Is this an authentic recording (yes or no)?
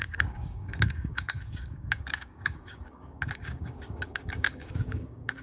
no